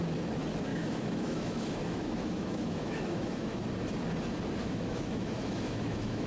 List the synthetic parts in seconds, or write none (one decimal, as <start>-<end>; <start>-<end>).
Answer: 0.7-3.6; 4.6-6.3